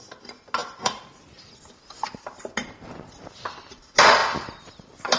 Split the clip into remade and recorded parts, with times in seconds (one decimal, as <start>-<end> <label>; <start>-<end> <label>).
0.0-5.2 recorded